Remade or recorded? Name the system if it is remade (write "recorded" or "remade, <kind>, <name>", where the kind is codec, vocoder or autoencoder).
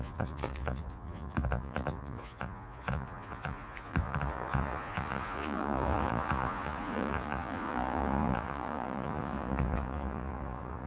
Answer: remade, vocoder, Vocos